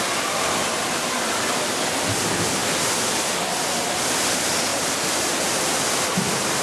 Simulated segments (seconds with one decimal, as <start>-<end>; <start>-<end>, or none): 4.7-5.4